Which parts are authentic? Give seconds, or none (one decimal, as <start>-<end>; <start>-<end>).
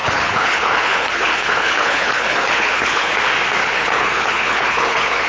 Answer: 3.2-3.6